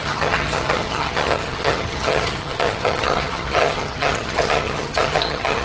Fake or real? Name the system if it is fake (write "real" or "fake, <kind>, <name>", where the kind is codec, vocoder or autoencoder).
fake, vocoder, HiFi-GAN